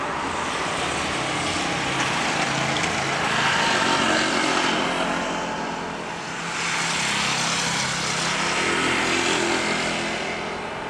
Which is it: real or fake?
real